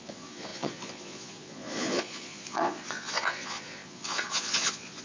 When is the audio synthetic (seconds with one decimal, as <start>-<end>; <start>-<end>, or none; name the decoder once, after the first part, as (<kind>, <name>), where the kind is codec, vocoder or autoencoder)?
0.0-5.0 (vocoder, Vocos)